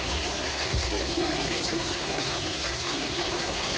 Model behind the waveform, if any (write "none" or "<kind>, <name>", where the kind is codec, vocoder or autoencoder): codec, SNAC